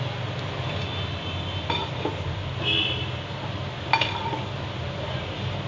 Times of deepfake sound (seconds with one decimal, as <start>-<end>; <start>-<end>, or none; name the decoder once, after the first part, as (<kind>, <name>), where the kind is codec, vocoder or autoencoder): none